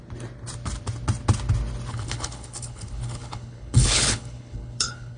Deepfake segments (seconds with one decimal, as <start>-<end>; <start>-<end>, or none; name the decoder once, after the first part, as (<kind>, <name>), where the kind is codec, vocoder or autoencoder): 1.9-5.2 (codec, HILCodec)